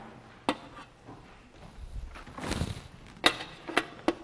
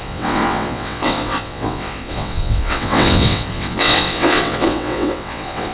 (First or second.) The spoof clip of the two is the second